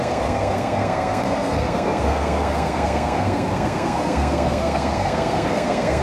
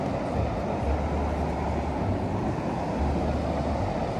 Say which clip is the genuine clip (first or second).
second